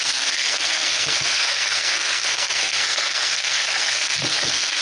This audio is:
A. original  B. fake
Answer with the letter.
B